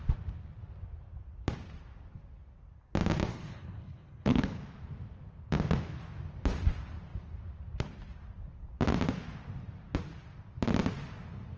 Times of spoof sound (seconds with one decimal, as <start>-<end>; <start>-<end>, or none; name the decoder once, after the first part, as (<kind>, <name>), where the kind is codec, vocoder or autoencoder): 3.3-4.6 (codec, HILCodec)